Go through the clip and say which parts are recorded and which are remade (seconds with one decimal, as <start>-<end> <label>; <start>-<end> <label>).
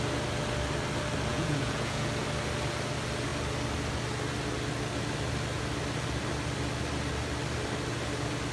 0.0-1.3 recorded; 1.3-2.1 remade; 2.1-8.5 recorded